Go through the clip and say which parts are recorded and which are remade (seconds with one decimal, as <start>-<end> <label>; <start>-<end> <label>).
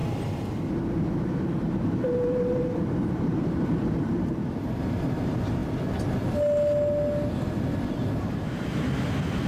0.0-1.5 recorded; 1.5-5.6 remade; 5.6-8.2 recorded; 8.2-8.7 remade; 8.7-9.5 recorded